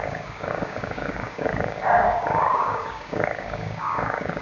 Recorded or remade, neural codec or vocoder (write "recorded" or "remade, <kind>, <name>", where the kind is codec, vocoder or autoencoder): remade, codec, DAC